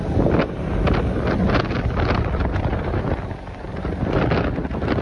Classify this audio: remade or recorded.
recorded